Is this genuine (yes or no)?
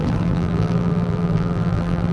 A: no